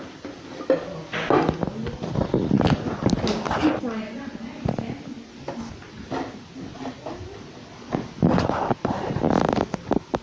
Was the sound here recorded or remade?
recorded